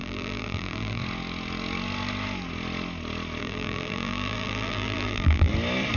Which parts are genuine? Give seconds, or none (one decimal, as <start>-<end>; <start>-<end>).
1.0-3.4; 5.5-6.0